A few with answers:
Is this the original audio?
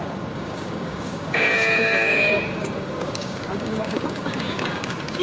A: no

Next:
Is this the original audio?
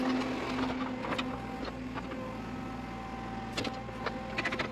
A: yes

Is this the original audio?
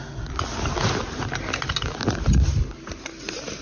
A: yes